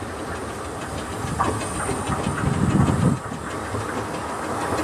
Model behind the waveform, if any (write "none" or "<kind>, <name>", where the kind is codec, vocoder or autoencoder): none